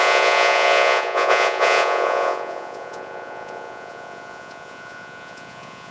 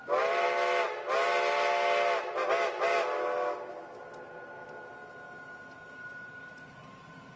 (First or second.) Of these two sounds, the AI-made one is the first